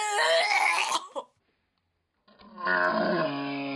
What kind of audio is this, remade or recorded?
recorded